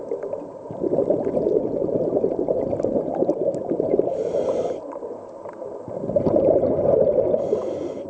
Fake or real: real